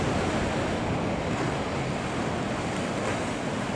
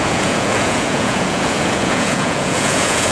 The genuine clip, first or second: first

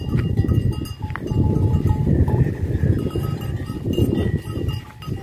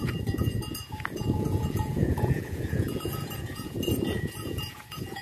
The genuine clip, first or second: first